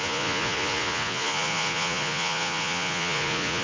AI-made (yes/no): yes